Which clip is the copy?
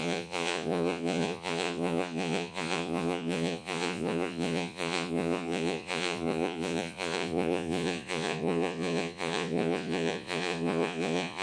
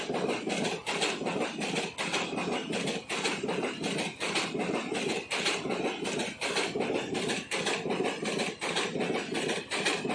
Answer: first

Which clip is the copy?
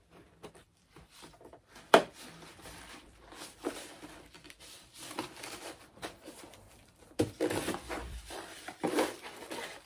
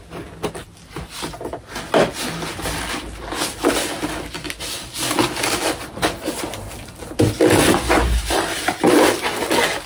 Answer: first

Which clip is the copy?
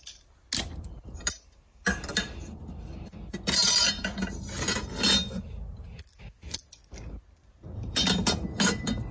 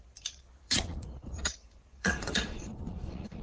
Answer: second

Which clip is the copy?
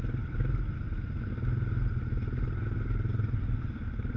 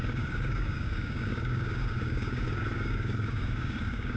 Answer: second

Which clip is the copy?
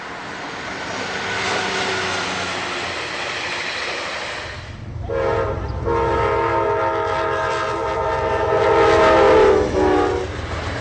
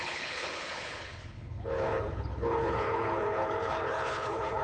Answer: second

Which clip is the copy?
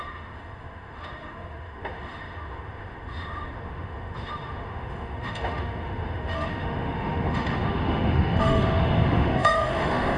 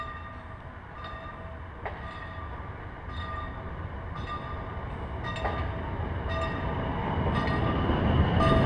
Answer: first